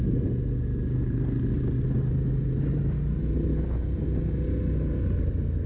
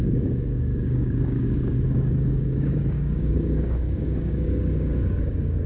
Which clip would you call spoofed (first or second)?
second